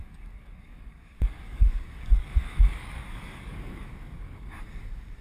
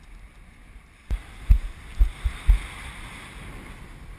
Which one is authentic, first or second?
second